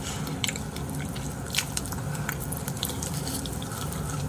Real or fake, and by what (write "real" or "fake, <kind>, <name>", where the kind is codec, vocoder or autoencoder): fake, vocoder, BigVGAN v2